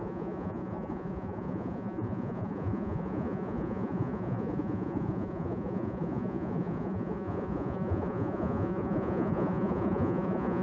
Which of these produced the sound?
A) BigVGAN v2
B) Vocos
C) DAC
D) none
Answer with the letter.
B